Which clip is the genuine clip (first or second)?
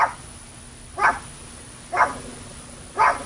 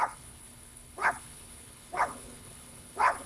first